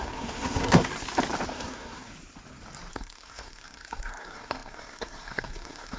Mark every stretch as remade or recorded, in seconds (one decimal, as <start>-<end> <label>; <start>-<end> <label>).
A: 0.0-0.9 remade; 0.9-1.5 recorded; 1.5-2.1 remade; 2.1-2.9 recorded; 2.9-6.0 remade